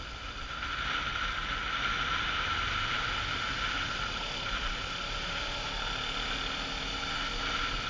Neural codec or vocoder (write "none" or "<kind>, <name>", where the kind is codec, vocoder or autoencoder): none